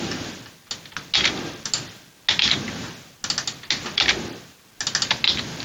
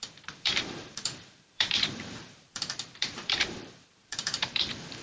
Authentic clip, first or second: first